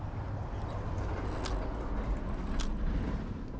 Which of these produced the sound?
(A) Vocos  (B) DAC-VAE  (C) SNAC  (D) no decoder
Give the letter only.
D